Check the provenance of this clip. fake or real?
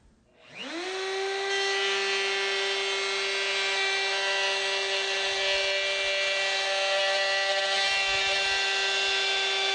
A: real